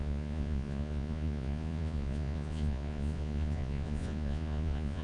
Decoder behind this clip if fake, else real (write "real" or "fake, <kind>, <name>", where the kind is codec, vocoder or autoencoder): fake, vocoder, Vocos